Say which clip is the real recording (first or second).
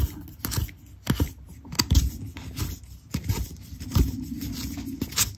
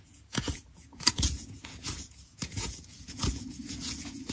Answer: first